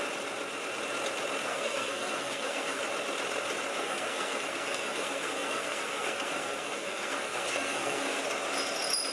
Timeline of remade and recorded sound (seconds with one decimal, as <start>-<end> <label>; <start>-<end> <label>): 0.0-1.5 recorded; 1.5-2.8 remade; 2.8-3.7 recorded; 3.7-8.2 remade; 8.2-9.1 recorded

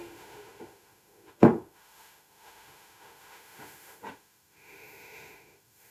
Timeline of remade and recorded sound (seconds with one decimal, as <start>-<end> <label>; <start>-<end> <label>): 0.0-5.9 remade

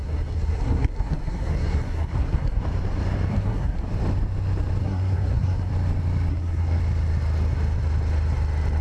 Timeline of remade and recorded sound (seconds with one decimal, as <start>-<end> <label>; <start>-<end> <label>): 0.0-2.6 remade; 2.6-3.3 recorded; 3.3-3.8 remade; 3.8-4.8 recorded; 4.8-5.7 remade; 5.7-6.3 recorded; 6.3-6.8 remade; 6.8-8.8 recorded

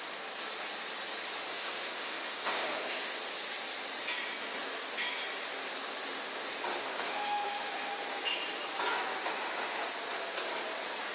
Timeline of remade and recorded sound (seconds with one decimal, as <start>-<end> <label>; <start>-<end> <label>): 0.0-1.5 recorded; 1.5-3.2 remade; 3.2-6.9 recorded; 6.9-7.9 remade; 7.9-11.1 recorded

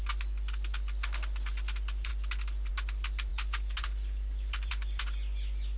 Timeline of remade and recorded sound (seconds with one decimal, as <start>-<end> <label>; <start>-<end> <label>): 0.0-5.8 recorded

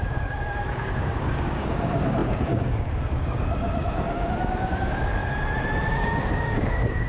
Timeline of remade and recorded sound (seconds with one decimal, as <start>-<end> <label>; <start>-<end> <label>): 0.0-5.2 remade; 5.2-5.9 recorded; 5.9-7.1 remade

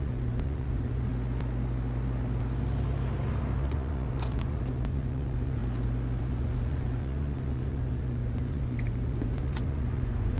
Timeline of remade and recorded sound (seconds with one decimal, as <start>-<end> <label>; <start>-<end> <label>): 0.0-1.1 remade; 1.1-3.6 recorded; 3.6-5.6 remade; 5.6-6.2 recorded; 6.2-10.4 remade

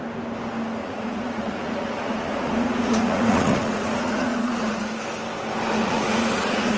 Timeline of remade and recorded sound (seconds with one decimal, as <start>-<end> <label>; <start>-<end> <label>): 0.0-0.8 recorded; 0.8-4.9 remade; 4.9-5.8 recorded; 5.8-6.8 remade